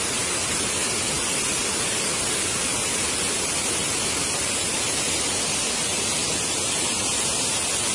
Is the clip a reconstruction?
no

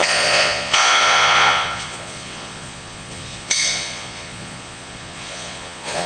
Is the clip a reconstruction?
yes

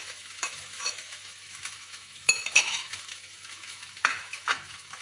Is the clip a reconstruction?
yes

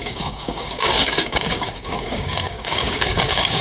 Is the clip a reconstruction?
yes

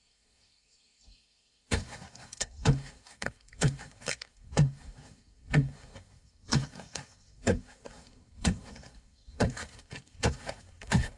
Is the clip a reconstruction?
yes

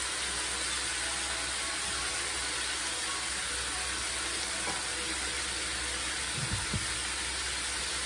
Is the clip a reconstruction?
no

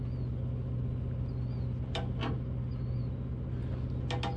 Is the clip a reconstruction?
no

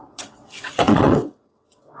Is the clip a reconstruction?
yes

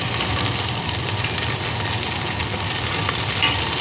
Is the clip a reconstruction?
no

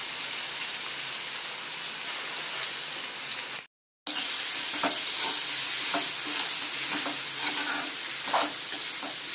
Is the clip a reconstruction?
no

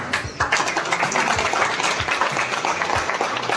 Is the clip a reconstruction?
no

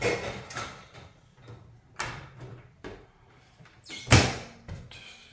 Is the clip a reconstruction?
no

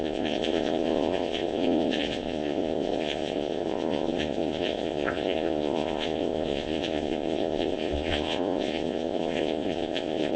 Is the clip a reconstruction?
yes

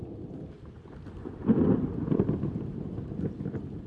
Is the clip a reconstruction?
no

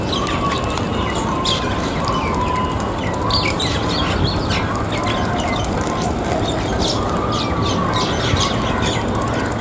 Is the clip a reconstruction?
no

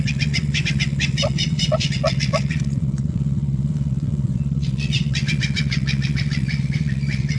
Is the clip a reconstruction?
yes